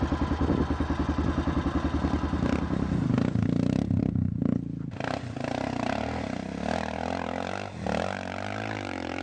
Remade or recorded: recorded